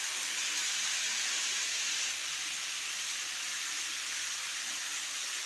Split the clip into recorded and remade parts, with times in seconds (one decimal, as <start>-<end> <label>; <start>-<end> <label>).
0.0-5.5 recorded